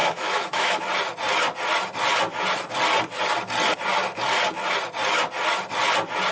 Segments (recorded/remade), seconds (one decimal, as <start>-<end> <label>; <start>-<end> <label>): 0.0-0.8 remade; 0.8-6.3 recorded